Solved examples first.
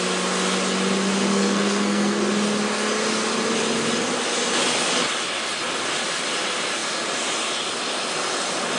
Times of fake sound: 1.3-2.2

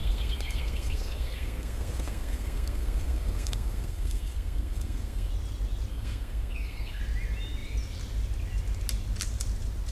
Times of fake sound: 0.0-5.3; 5.9-7.0

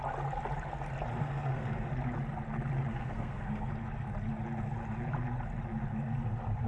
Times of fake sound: 1.2-1.9; 2.9-3.7

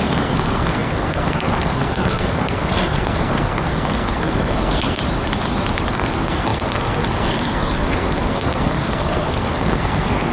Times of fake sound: 0.0-5.0; 5.9-10.3